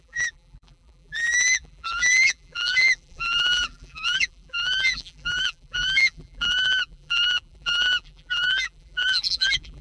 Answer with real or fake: fake